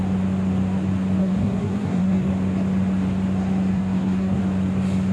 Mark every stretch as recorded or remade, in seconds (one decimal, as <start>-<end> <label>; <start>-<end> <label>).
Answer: 0.0-1.2 recorded; 1.2-2.3 remade; 2.3-3.7 recorded; 3.7-4.4 remade; 4.4-5.1 recorded